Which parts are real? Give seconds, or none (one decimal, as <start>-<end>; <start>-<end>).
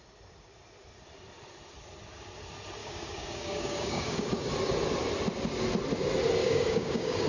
0.0-2.8; 4.3-6.4